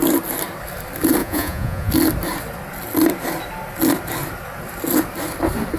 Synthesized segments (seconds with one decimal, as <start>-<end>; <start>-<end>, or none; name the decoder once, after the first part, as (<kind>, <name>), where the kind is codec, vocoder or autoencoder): 1.2-1.9 (vocoder, Vocos)